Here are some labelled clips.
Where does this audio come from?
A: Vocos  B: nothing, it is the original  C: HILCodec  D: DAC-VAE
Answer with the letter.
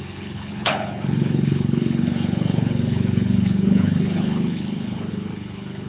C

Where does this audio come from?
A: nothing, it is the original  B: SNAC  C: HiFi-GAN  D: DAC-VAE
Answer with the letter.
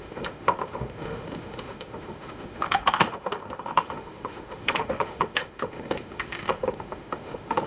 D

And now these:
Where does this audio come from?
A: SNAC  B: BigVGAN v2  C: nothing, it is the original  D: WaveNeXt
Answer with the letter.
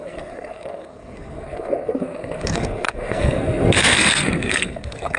A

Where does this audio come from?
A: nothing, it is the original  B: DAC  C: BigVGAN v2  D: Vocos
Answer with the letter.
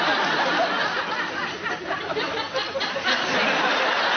A